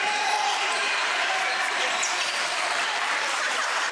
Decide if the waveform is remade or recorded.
remade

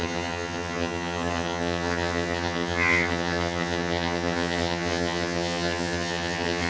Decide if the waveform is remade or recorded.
remade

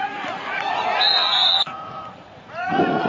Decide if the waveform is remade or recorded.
remade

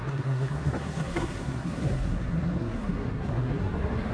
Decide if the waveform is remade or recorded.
remade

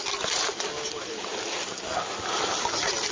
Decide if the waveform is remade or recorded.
recorded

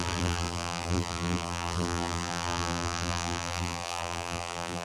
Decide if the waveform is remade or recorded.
remade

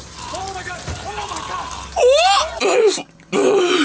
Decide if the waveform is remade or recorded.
recorded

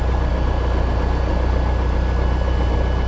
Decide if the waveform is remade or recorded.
recorded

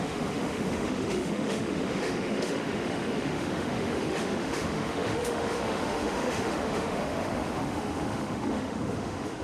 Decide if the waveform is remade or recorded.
remade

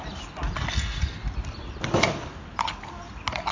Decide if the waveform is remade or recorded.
recorded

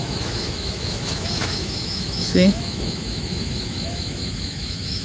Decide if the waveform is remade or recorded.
remade